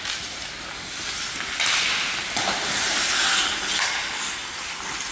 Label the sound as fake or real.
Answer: real